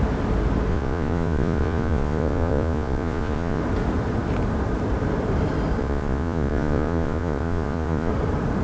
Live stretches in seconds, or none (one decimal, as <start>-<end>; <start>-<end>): 0.0-0.7; 3.6-5.8; 8.1-8.6